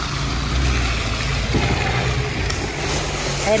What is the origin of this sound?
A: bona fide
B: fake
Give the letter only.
A